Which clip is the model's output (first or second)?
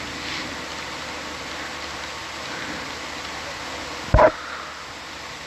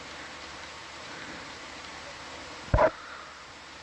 second